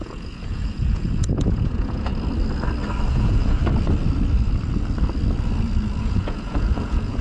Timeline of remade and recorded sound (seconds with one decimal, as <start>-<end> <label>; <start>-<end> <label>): 0.0-2.1 remade; 2.1-3.1 recorded; 3.1-3.6 remade; 3.6-6.0 recorded; 6.0-7.2 remade